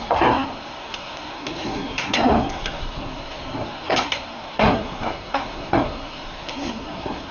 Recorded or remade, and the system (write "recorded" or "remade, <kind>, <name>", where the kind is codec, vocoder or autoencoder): remade, codec, SNAC